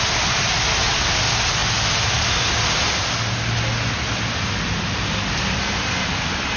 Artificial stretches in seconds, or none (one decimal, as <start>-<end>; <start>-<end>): none